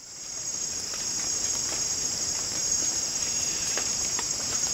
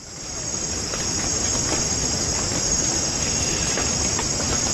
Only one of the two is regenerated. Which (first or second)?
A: first